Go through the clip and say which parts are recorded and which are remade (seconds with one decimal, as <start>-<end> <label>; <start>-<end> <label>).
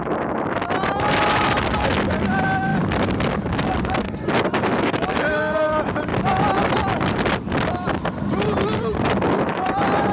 0.0-6.1 recorded; 6.1-10.1 remade